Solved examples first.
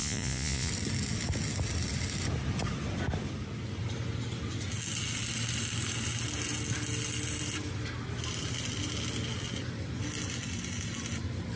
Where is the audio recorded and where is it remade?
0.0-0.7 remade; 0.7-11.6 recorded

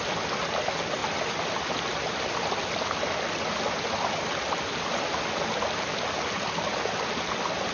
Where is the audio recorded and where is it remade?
0.0-7.7 recorded